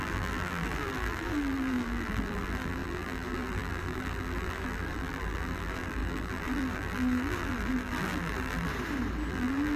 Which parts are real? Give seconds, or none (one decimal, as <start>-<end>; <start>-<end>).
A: 8.7-9.3